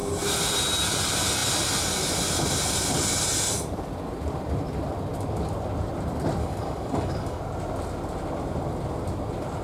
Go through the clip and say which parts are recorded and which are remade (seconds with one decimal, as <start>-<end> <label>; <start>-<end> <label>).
0.0-6.4 recorded; 6.4-7.4 remade; 7.4-9.6 recorded